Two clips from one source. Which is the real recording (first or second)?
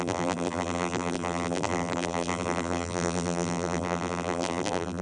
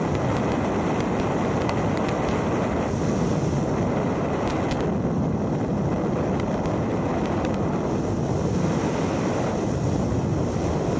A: second